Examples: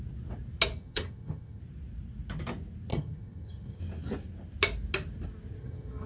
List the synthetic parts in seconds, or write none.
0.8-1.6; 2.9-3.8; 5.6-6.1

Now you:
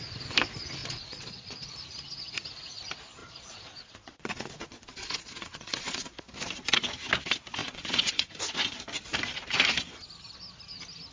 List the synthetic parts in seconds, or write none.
0.8-1.7; 3.2-6.1; 7.6-8.3

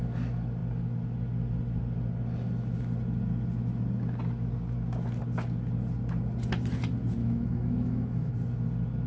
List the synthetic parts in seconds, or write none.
7.2-8.3